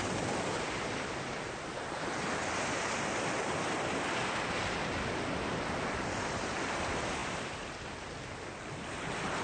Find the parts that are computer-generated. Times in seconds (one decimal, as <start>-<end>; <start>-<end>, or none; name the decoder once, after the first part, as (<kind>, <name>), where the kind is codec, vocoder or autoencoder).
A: none